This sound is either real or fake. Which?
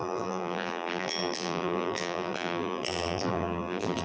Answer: fake